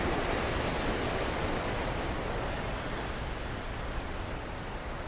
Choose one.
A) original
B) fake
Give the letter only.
A